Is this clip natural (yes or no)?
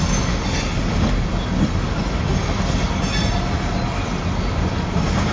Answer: yes